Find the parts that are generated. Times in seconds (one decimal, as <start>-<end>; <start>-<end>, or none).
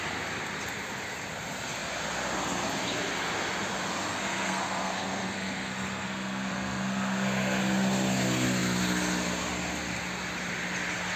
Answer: 4.1-7.6